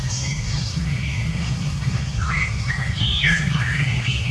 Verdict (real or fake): fake